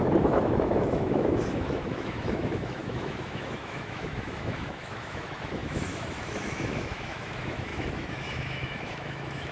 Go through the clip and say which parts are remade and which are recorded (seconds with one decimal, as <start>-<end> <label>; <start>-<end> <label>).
0.0-9.5 remade